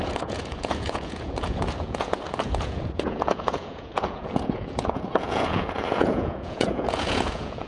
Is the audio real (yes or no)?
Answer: no